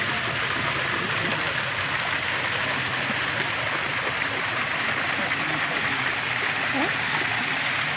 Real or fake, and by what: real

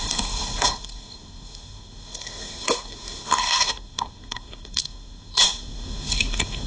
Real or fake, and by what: fake, codec, SNAC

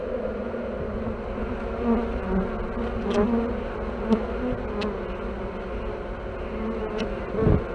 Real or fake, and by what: real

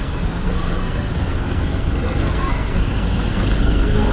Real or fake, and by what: fake, codec, SNAC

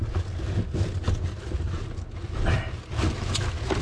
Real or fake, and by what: real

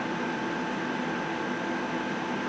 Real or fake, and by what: real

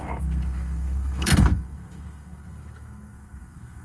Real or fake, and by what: fake, codec, SNAC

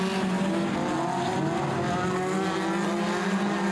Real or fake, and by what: real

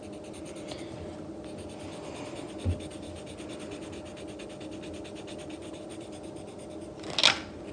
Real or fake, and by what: real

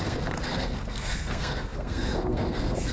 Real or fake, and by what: fake, codec, SNAC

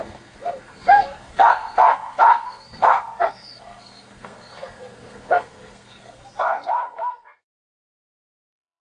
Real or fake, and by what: fake, codec, SNAC